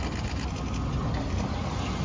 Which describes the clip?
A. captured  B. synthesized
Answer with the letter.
A